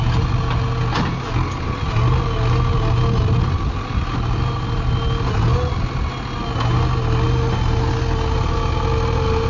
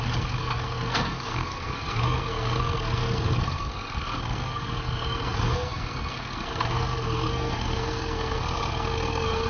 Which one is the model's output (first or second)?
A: second